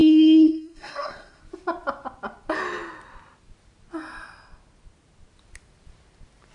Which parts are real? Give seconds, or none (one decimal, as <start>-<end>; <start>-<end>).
1.4-6.5